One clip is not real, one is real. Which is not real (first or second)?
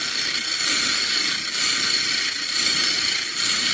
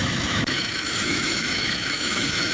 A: second